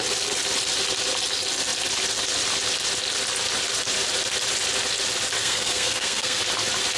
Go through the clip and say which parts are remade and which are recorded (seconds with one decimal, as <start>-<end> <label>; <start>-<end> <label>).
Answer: 0.0-5.4 recorded; 5.4-6.4 remade; 6.4-7.0 recorded